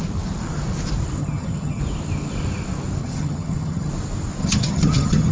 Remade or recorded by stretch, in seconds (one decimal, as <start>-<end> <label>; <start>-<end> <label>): 0.0-1.2 recorded; 1.2-1.8 remade; 1.8-3.0 recorded; 3.0-3.9 remade; 3.9-4.4 recorded; 4.4-5.3 remade